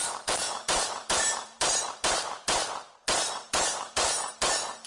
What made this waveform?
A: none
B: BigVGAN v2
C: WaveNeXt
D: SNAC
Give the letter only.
B